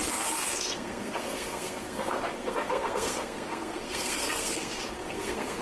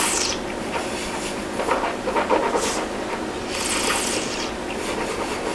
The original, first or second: second